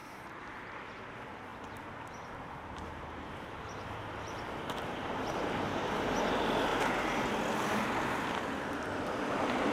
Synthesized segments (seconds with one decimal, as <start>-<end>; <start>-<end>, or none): 0.0-0.8; 1.5-6.0